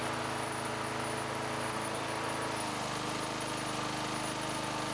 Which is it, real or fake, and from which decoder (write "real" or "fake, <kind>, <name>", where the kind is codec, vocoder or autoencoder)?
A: real